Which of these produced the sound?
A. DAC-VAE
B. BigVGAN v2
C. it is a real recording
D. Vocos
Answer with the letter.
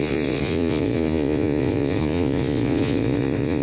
D